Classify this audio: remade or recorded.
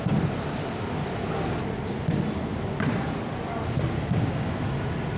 recorded